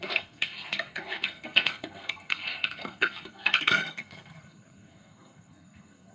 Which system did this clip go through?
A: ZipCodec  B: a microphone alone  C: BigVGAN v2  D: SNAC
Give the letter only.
D